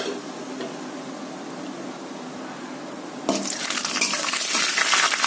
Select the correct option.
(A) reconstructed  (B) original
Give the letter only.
B